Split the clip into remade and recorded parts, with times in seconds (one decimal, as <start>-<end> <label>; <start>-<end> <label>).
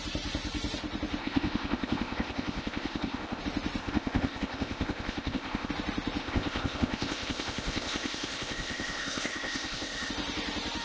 0.0-1.2 recorded; 1.2-3.4 remade; 3.4-3.8 recorded; 3.8-5.7 remade; 5.7-6.2 recorded; 6.2-10.1 remade; 10.1-10.8 recorded